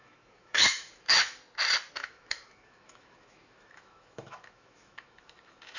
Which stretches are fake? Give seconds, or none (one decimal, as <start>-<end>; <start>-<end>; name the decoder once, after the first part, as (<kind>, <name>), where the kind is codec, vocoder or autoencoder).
0.0-1.4 (autoencoder, DAC-VAE); 1.9-5.8

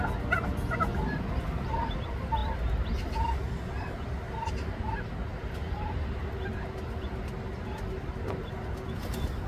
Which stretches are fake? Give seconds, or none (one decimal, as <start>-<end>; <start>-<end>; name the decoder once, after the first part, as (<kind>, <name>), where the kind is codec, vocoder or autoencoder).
none

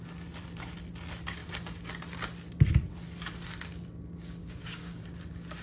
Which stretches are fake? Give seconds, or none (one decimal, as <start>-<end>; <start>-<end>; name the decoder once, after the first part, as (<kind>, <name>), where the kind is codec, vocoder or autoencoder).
4.4-5.0 (codec, DAC)

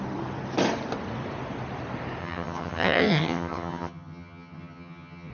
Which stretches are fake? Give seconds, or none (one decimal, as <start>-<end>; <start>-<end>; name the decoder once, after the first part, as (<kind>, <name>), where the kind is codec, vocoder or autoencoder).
2.2-5.3 (vocoder, HiFi-GAN)

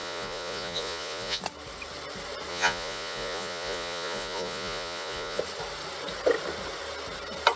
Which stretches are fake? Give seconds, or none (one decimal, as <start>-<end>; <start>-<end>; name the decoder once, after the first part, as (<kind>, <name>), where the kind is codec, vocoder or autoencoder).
0.0-1.4 (vocoder, Vocos); 2.5-5.4